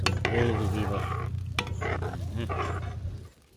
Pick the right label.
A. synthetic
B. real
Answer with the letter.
B